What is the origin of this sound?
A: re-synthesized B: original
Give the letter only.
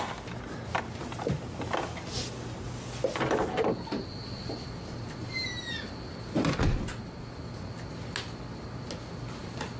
B